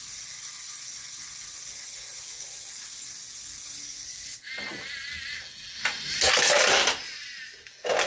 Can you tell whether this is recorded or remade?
recorded